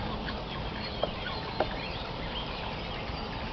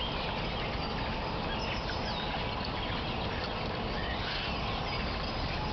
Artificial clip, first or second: first